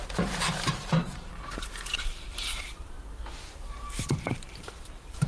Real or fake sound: fake